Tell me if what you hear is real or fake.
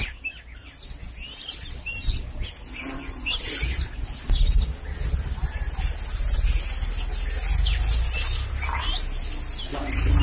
real